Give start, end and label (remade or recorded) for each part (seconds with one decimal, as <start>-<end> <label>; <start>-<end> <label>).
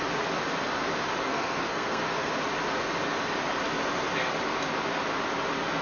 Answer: 0.0-1.2 recorded; 1.2-2.3 remade; 2.3-5.8 recorded